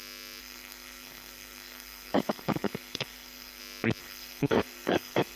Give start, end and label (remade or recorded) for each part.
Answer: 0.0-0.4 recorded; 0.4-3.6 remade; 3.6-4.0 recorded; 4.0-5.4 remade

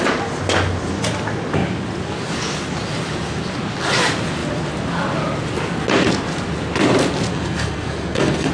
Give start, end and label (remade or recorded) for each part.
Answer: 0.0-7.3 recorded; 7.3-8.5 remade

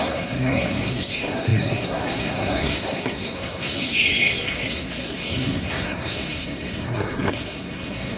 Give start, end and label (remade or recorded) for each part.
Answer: 0.0-8.2 remade

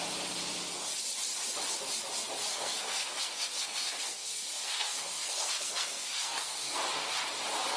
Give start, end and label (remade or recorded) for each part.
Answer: 0.0-2.4 recorded; 2.4-6.8 remade; 6.8-7.8 recorded